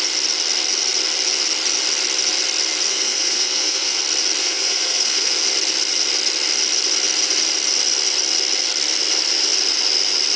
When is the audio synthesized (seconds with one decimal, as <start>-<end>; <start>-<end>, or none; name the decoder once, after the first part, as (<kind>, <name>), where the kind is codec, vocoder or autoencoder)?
2.9-4.0 (codec, SNAC); 4.4-5.3